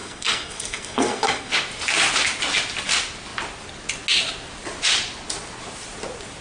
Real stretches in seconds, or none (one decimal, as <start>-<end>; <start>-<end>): 1.5-6.4